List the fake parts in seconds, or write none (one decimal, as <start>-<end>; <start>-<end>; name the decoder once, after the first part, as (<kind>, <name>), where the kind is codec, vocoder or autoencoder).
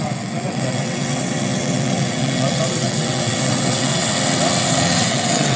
0.0-4.1 (vocoder, WaveNeXt); 4.7-5.6